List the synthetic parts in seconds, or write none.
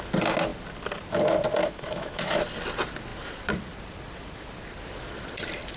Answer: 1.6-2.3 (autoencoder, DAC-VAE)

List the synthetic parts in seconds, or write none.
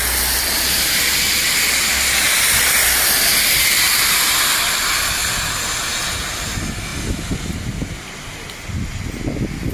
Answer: none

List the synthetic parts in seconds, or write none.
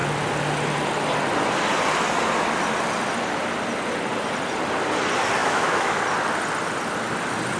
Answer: 5.4-6.0 (autoencoder, DAC-VAE)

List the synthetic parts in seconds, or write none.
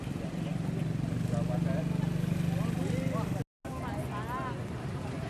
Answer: none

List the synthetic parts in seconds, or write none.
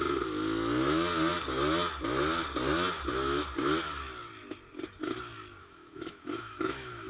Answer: 5.6-7.1 (autoencoder, DAC-VAE)